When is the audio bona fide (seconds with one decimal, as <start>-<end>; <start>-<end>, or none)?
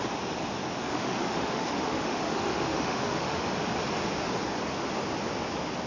0.0-0.9; 3.4-5.9